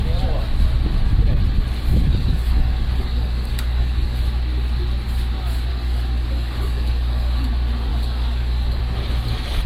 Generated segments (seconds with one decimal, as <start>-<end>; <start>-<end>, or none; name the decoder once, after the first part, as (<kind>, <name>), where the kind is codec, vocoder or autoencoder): 2.1-4.2 (codec, DAC); 5.7-7.5; 7.9-8.8